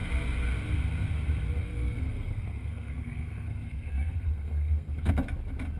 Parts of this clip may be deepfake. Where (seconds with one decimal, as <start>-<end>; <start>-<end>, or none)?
1.6-5.1